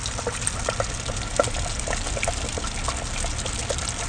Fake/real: real